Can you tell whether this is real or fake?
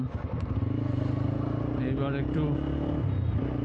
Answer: real